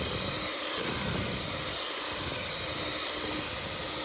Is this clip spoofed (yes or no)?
yes